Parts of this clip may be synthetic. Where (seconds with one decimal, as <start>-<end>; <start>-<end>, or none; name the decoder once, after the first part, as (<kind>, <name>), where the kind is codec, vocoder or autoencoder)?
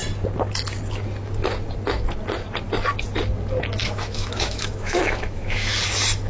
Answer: 3.8-5.7 (autoencoder, DAC-VAE)